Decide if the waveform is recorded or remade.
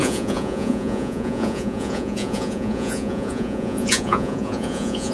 remade